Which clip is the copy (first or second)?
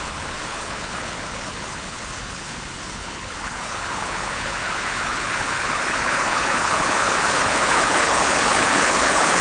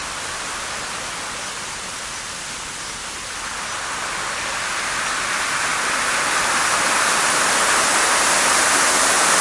first